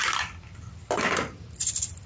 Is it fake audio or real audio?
real